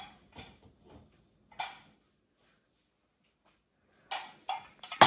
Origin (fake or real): real